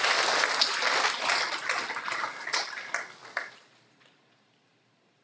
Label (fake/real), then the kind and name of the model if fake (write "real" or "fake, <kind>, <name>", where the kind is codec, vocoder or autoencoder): real